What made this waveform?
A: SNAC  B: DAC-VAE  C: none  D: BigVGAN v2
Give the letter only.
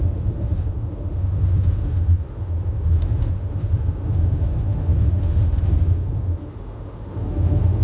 B